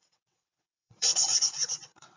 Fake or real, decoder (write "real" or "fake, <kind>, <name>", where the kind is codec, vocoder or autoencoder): fake, vocoder, WaveNeXt